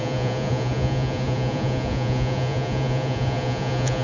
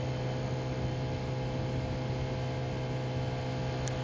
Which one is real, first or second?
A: second